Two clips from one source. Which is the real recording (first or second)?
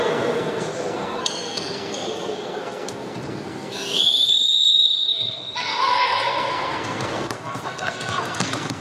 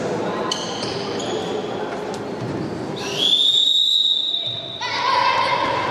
second